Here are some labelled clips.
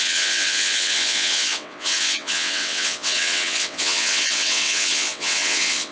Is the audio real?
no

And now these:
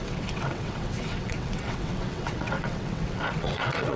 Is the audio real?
no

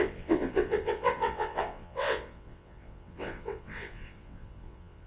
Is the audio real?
no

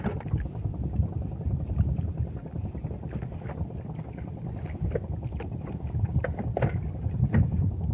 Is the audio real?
yes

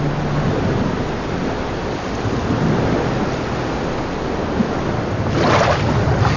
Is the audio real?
yes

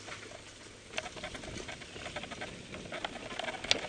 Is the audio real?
yes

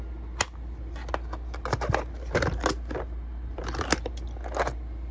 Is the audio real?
yes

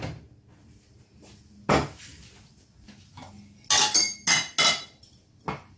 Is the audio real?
yes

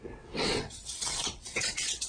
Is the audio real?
no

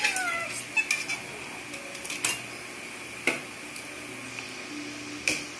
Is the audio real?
yes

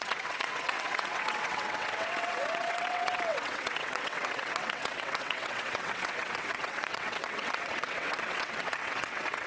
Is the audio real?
no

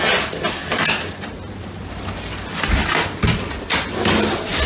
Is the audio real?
yes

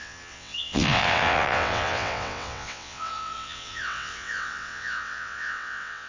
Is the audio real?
no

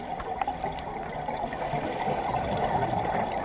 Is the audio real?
yes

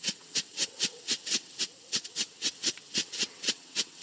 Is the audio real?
no